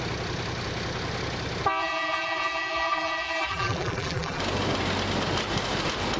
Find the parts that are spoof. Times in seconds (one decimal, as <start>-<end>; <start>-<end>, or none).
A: 1.8-4.4